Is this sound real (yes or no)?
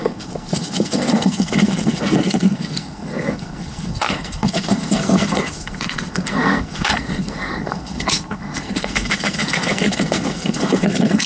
no